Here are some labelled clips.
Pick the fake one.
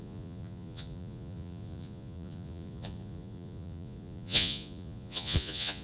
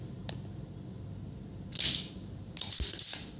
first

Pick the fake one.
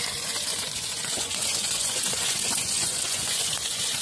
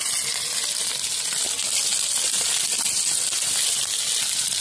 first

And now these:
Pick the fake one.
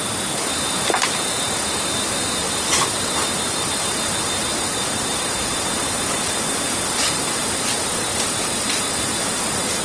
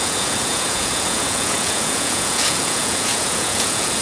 second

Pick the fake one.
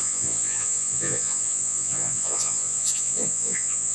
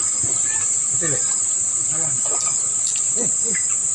first